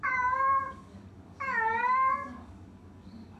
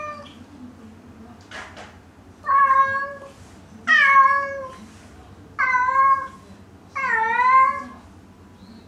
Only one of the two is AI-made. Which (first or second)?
first